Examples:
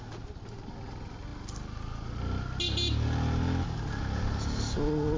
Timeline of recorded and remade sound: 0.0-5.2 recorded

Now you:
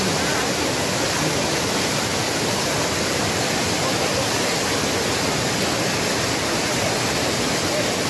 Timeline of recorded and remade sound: 0.0-8.1 recorded

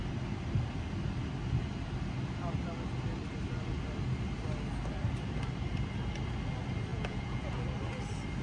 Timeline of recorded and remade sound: 0.0-6.9 recorded; 6.9-7.6 remade; 7.6-8.4 recorded

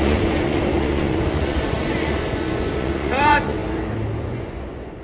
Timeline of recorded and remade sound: 0.0-3.6 remade; 3.6-4.2 recorded; 4.2-5.0 remade

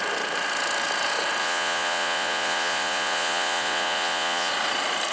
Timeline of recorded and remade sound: 0.0-1.4 recorded; 1.4-4.5 remade; 4.5-5.1 recorded

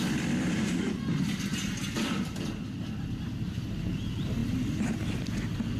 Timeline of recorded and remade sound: 0.0-5.8 recorded

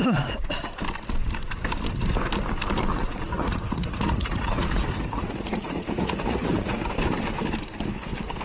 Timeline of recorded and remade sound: 0.0-0.5 remade; 0.5-2.9 recorded; 2.9-6.9 remade; 6.9-8.4 recorded

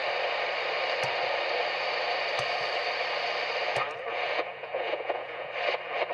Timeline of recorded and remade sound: 0.0-4.1 recorded; 4.1-5.5 remade; 5.5-6.1 recorded